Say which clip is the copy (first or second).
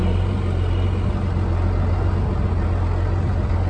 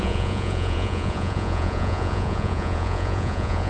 second